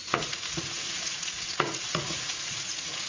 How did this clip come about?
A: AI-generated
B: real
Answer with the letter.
A